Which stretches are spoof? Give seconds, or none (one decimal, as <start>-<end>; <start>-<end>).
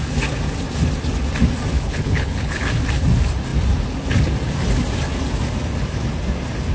1.7-2.6